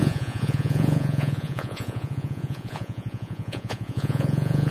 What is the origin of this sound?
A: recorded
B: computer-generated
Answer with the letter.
B